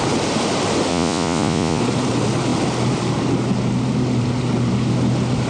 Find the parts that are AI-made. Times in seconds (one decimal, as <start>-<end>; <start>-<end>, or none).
0.9-1.8